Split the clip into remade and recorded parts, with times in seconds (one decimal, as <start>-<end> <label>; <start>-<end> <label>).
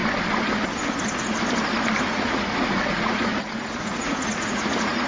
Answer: 0.0-2.0 recorded; 2.0-3.3 remade; 3.3-3.8 recorded; 3.8-5.1 remade